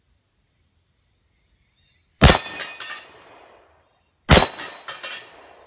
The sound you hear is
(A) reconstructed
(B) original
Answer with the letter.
B